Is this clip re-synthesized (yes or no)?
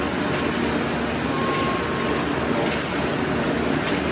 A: no